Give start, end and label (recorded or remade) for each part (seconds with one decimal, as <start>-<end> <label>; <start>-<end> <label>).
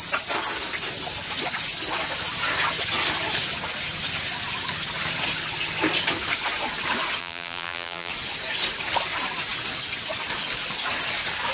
0.0-7.2 recorded; 7.2-8.1 remade; 8.1-11.5 recorded